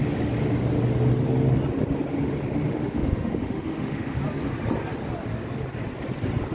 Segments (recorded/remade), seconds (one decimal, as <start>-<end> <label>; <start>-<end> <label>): 0.0-2.8 recorded; 2.8-4.2 remade; 4.2-6.5 recorded